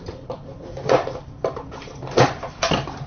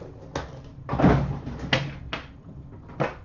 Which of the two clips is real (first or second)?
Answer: second